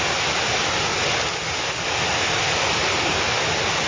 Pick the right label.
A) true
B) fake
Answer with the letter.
A